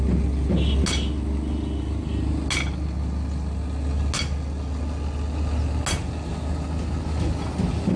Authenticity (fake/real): real